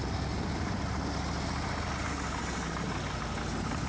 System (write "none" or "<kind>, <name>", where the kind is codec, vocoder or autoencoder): none